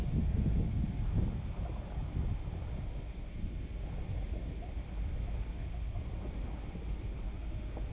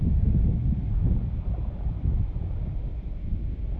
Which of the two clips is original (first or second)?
first